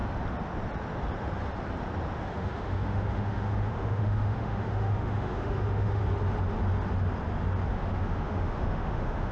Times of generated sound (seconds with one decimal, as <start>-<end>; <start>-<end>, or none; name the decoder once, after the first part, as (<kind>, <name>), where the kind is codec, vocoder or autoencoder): 2.3-6.0 (autoencoder, DAC-VAE); 7.7-9.3